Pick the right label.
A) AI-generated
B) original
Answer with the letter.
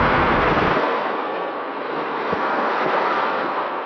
A